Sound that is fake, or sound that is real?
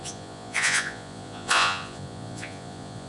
fake